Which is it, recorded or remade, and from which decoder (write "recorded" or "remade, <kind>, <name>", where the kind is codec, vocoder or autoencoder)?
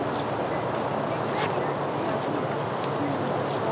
recorded